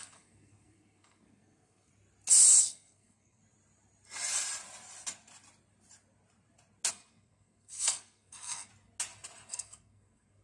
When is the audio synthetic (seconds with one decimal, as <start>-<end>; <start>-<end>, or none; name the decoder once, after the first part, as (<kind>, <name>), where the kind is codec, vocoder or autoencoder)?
0.0-1.9 (codec, SNAC); 2.6-3.4; 6.9-8.7; 9.5-10.4